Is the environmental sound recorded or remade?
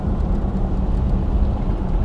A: recorded